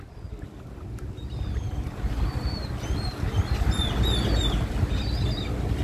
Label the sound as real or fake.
real